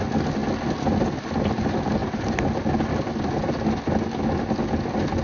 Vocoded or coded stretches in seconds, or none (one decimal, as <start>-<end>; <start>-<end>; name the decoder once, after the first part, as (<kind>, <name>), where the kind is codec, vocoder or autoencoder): none